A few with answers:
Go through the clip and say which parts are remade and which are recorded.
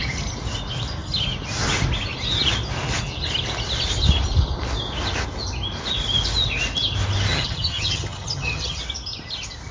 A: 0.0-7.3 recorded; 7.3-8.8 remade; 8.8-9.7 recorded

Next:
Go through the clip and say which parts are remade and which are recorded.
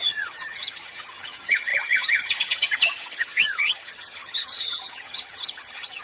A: 0.0-6.0 remade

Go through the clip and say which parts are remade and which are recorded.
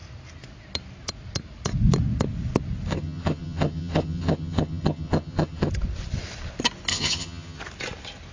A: 0.0-2.9 recorded; 2.9-5.7 remade; 5.7-6.9 recorded; 6.9-7.6 remade; 7.6-8.3 recorded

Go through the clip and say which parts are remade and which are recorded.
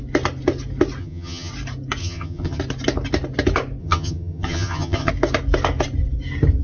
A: 0.0-1.0 recorded; 1.0-1.5 remade; 1.5-2.0 recorded; 2.0-2.6 remade; 2.6-3.8 recorded; 3.8-5.1 remade; 5.1-6.6 recorded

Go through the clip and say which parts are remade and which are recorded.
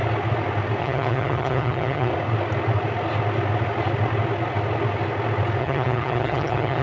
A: 0.0-0.8 recorded; 0.8-2.1 remade; 2.1-5.6 recorded; 5.6-6.8 remade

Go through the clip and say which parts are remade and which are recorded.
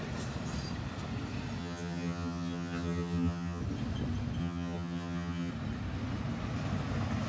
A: 0.0-1.6 recorded; 1.6-3.6 remade; 3.6-4.4 recorded; 4.4-5.5 remade; 5.5-7.3 recorded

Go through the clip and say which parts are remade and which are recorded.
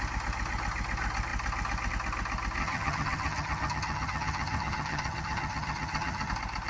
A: 0.0-2.6 recorded; 2.6-6.3 remade; 6.3-6.7 recorded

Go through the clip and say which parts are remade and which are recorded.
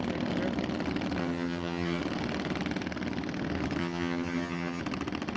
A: 0.0-1.2 recorded; 1.2-2.0 remade; 2.0-3.8 recorded; 3.8-4.8 remade; 4.8-5.4 recorded